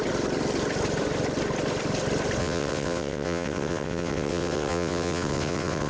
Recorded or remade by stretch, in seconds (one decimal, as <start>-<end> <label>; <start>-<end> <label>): 0.0-2.4 recorded; 2.4-5.9 remade